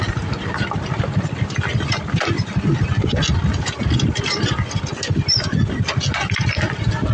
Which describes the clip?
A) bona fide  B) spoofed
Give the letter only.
A